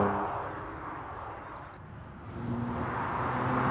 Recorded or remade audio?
recorded